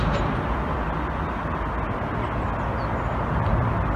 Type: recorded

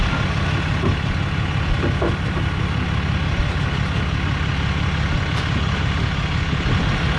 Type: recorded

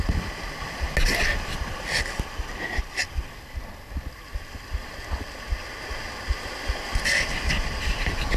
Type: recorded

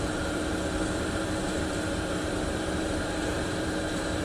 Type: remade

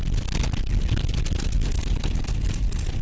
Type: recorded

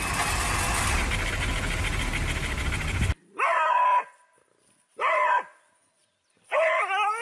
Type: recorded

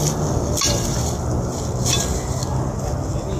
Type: recorded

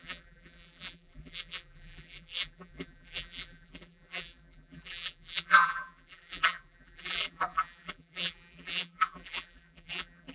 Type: remade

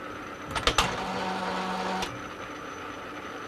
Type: recorded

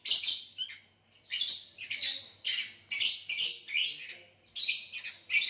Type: recorded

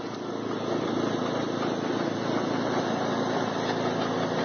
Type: recorded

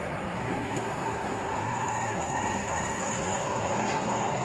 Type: remade